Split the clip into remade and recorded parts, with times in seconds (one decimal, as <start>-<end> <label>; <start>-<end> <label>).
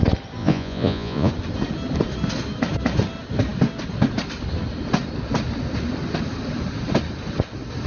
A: 0.0-0.4 recorded; 0.4-1.3 remade; 1.3-7.9 recorded